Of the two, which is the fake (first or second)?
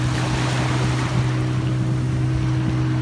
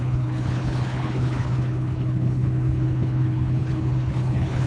second